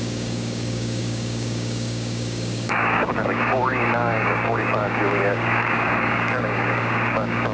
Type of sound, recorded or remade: remade